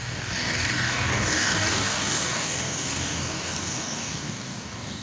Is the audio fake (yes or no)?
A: yes